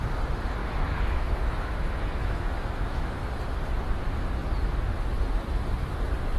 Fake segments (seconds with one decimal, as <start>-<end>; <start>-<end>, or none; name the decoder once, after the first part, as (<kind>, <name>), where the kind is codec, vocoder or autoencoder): 0.6-3.3 (autoencoder, DAC-VAE)